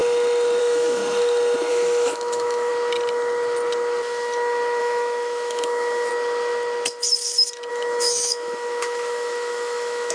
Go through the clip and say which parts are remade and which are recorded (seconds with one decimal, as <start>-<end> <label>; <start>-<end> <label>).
0.0-0.6 recorded; 0.6-1.0 remade; 1.0-1.7 recorded; 1.7-2.7 remade; 2.7-4.8 recorded; 4.8-6.1 remade; 6.1-7.7 recorded; 7.7-10.1 remade